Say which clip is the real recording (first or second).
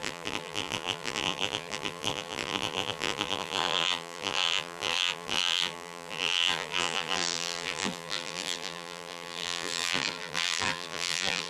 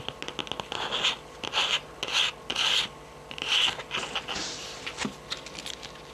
second